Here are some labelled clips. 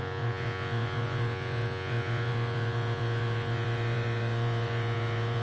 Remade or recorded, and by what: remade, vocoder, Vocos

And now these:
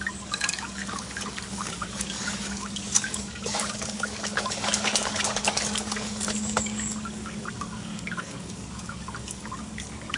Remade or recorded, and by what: remade, codec, DAC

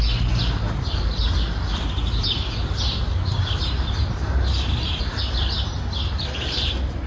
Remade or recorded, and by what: recorded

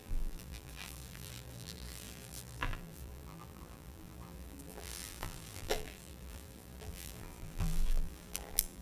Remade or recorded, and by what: remade, vocoder, BigVGAN v2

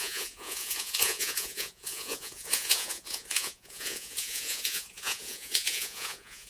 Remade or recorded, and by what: remade, vocoder, Vocos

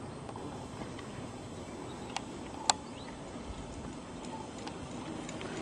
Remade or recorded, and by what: recorded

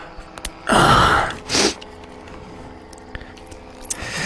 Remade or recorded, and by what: recorded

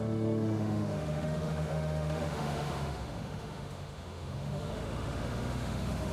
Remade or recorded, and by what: remade, autoencoder, DAC-VAE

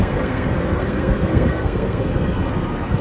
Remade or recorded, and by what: remade, codec, SNAC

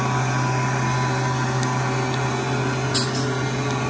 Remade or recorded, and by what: recorded